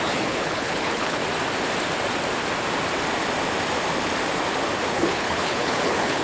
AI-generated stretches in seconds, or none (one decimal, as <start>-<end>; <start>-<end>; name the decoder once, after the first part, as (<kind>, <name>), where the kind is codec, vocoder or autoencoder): 0.0-1.2 (codec, HILCodec); 4.9-6.2